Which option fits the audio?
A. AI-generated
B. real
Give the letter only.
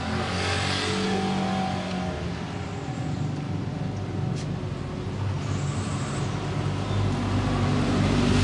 B